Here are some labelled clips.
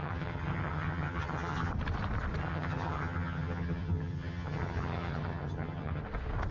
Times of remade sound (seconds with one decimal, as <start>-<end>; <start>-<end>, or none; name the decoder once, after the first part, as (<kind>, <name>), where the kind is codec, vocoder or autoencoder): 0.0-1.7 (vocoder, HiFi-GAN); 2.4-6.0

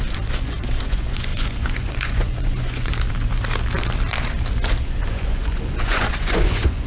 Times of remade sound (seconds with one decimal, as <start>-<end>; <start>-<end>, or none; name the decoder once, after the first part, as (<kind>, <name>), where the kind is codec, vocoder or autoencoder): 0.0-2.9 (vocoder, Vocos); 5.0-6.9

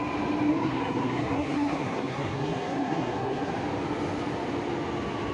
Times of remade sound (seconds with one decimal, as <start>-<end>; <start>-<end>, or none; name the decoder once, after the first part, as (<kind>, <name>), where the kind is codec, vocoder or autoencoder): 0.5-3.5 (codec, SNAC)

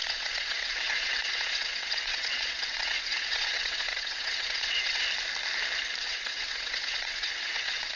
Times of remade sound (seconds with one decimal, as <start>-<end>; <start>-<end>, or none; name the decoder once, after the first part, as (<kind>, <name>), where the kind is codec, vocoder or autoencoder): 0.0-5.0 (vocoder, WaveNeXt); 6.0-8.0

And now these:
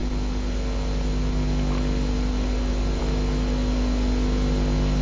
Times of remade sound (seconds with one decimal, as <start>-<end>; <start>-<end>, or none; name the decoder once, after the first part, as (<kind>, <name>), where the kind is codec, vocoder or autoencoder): none

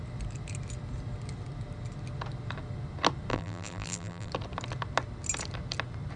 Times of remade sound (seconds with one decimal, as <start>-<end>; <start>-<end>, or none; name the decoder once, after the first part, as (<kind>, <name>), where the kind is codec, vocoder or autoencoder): 3.3-4.3 (vocoder, BigVGAN v2)